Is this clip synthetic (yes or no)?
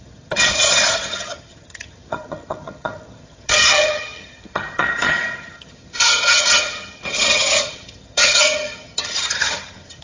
yes